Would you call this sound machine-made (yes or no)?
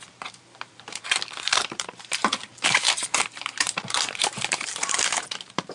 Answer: yes